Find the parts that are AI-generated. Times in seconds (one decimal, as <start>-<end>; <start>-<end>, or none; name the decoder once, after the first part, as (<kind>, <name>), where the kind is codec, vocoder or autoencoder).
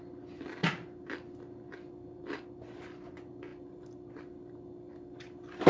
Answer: none